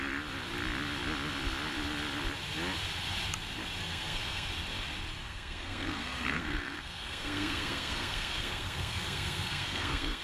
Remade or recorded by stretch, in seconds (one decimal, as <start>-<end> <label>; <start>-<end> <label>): 0.0-3.8 recorded; 3.8-4.5 remade; 4.5-5.2 recorded; 5.2-10.2 remade